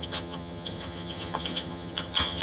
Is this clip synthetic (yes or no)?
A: yes